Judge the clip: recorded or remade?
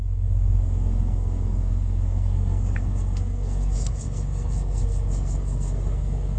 remade